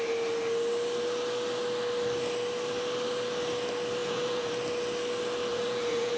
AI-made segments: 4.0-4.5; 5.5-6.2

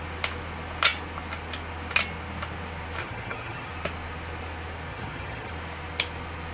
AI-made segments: 3.0-3.7; 4.9-5.5

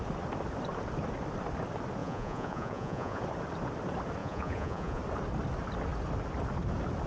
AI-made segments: 2.0-3.2; 4.2-5.0

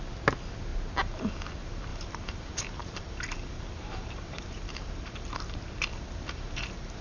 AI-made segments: 1.9-5.5; 5.9-7.0

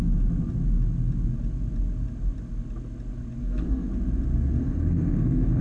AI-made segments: 3.4-3.9; 4.6-5.6

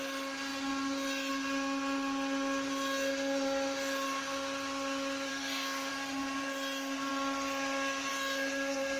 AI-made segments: 5.3-5.9